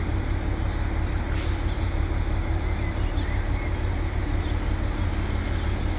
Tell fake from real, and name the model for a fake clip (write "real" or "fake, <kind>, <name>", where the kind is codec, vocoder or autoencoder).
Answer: real